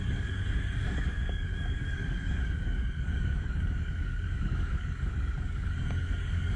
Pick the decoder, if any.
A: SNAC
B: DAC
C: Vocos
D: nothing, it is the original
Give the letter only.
B